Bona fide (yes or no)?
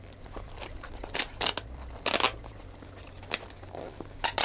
yes